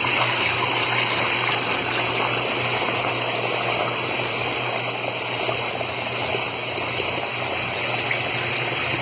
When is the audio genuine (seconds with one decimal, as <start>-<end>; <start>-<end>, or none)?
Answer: 0.0-9.0